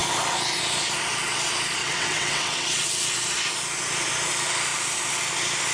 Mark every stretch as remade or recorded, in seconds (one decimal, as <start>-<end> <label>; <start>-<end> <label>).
0.0-1.8 recorded; 1.8-3.1 remade; 3.1-5.7 recorded